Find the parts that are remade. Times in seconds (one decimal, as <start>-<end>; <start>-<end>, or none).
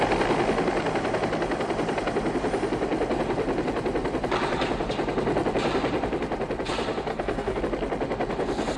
7.1-7.6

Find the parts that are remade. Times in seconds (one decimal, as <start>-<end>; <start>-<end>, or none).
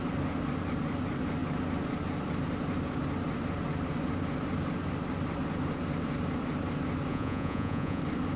7.1-8.0